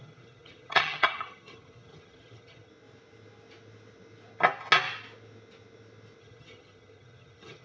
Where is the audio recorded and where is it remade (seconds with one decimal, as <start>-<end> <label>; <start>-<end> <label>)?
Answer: 0.0-2.7 remade; 2.7-6.2 recorded; 6.2-7.6 remade